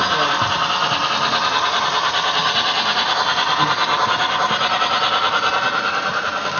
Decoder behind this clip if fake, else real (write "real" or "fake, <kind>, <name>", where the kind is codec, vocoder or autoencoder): real